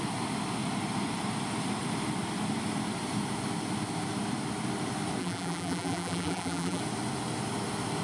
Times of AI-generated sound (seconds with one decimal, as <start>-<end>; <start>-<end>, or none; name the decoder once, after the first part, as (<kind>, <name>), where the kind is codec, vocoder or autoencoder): 5.2-6.8 (vocoder, BigVGAN v2)